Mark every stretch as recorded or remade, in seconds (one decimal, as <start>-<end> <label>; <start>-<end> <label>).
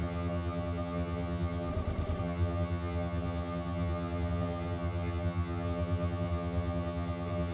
0.0-1.7 remade; 1.7-2.2 recorded; 2.2-7.5 remade